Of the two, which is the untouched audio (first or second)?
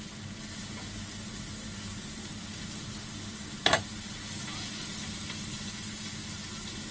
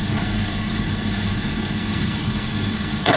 first